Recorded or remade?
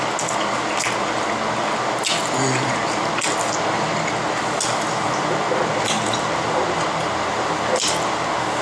recorded